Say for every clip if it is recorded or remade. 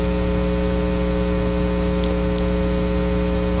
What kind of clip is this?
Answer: recorded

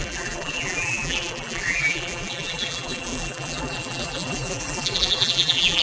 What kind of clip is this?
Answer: remade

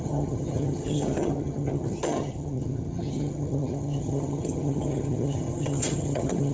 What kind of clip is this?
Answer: remade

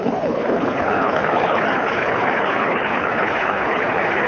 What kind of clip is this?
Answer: remade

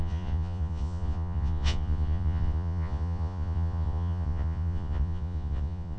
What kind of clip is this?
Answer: remade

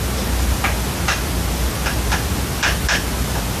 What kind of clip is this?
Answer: recorded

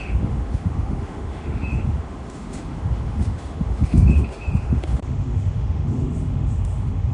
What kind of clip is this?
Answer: remade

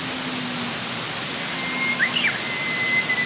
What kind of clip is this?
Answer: recorded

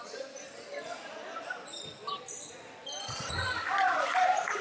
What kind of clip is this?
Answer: recorded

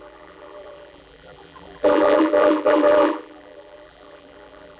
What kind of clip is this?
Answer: remade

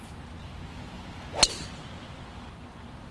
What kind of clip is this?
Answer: recorded